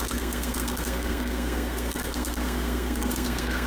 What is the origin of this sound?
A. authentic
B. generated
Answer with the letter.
B